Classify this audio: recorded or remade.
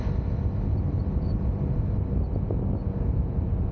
recorded